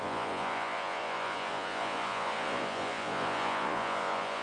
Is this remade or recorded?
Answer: remade